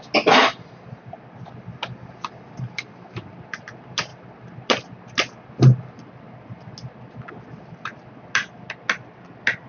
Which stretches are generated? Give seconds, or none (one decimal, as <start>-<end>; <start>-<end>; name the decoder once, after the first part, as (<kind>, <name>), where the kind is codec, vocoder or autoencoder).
none